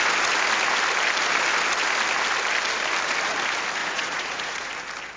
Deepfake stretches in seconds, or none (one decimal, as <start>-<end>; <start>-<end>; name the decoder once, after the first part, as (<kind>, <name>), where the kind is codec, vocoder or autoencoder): 3.8-4.7 (vocoder, Vocos)